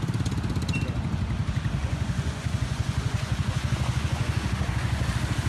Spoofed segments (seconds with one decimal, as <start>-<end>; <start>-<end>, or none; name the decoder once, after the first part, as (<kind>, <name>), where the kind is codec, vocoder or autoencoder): 1.8-5.1 (vocoder, Vocos)